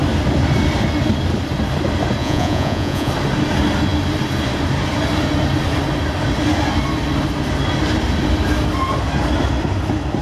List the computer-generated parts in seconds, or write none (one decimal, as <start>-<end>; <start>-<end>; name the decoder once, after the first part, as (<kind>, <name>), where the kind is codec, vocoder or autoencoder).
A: 2.2-3.1 (vocoder, Vocos)